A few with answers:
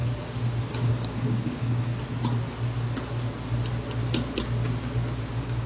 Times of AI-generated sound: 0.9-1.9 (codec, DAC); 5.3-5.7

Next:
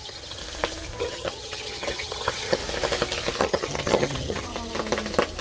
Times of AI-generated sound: 0.0-0.4 (vocoder, HiFi-GAN); 1.0-2.6; 3.4-4.5

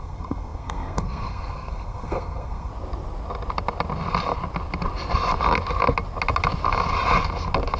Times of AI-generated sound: 0.0-2.7 (codec, SNAC)

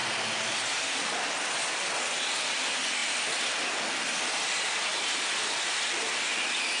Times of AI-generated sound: none

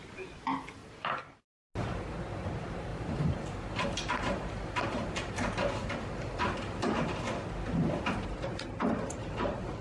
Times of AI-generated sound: 0.8-1.4 (vocoder, BigVGAN v2); 2.9-6.9; 9.2-9.8

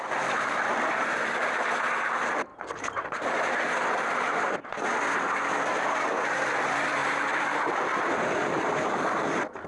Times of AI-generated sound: 0.0-9.7 (vocoder, BigVGAN v2)